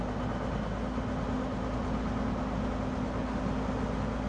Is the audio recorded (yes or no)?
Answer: yes